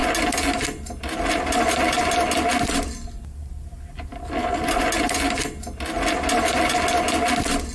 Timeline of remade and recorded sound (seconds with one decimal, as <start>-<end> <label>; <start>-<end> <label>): 0.0-7.7 recorded